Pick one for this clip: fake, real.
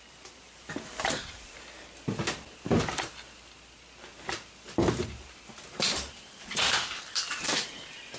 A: real